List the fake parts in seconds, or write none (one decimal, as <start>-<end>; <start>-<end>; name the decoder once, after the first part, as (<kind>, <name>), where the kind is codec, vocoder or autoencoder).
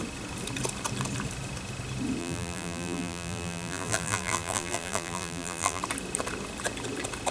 2.2-5.8 (vocoder, BigVGAN v2)